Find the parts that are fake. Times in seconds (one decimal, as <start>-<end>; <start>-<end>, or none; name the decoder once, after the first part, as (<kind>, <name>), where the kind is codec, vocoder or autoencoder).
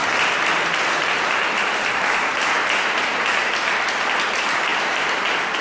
1.5-2.3 (vocoder, BigVGAN v2); 3.6-5.6